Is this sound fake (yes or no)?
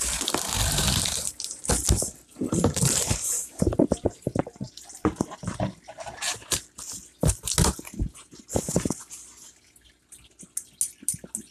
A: no